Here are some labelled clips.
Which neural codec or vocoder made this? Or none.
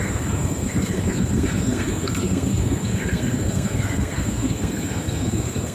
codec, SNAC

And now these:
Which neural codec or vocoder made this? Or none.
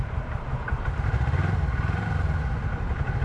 vocoder, BigVGAN v2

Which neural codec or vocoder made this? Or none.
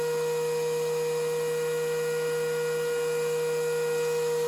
none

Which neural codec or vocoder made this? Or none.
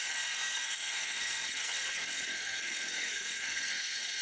codec, SNAC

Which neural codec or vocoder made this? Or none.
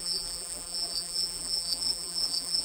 vocoder, BigVGAN v2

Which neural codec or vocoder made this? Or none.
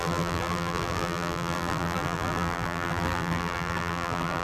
vocoder, BigVGAN v2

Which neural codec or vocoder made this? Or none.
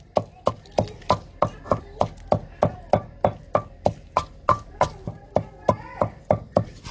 none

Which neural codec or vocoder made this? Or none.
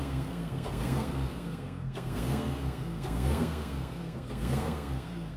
codec, SNAC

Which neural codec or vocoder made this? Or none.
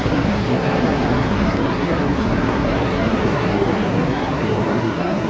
codec, SNAC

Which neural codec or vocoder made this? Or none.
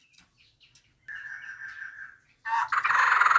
none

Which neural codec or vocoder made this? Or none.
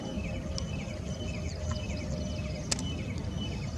none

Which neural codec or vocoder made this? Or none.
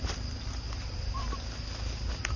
none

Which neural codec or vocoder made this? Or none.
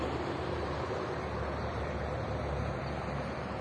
vocoder, BigVGAN v2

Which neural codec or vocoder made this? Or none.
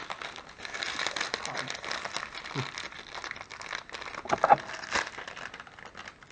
none